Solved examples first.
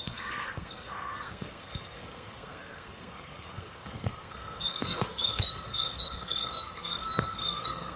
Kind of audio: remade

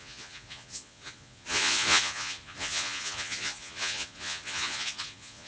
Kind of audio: remade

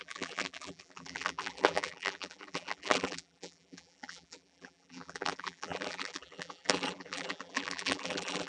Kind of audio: remade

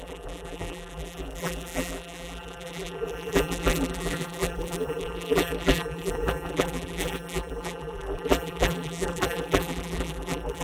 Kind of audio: remade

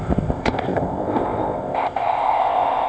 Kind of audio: remade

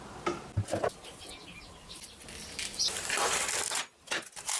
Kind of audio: remade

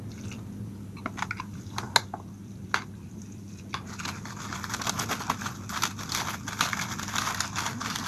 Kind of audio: recorded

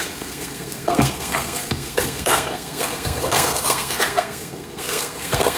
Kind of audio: remade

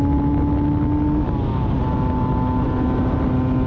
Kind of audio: recorded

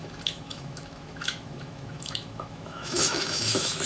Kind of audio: remade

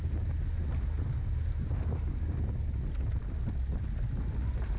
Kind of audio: recorded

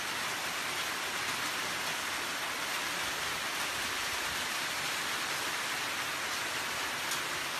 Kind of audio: recorded